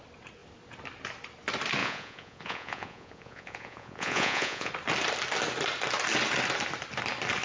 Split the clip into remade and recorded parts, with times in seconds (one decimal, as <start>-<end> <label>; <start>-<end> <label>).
0.0-1.8 recorded; 1.8-4.7 remade; 4.7-7.4 recorded